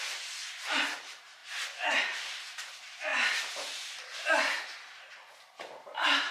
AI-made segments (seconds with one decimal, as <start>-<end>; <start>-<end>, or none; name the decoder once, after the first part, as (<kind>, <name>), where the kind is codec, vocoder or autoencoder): 0.0-1.4 (vocoder, BigVGAN v2); 2.3-3.1; 5.4-6.3